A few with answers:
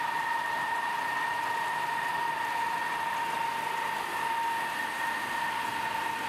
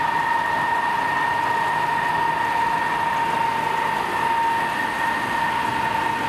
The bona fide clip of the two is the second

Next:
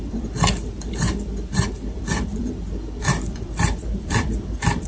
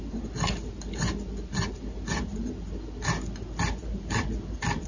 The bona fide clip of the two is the second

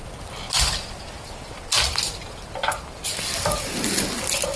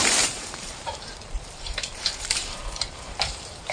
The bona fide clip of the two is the first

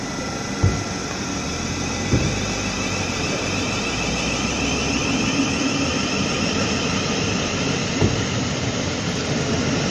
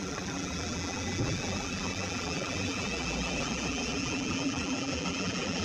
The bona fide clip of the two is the first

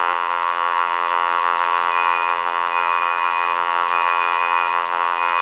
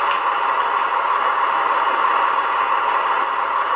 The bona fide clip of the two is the second